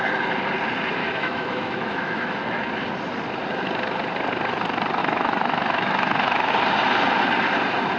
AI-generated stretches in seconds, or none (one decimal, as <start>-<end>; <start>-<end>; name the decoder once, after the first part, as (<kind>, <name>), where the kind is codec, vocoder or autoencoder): 1.0-2.6 (autoencoder, DAC-VAE); 5.0-6.5